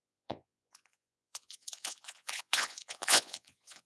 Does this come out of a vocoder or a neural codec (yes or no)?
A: yes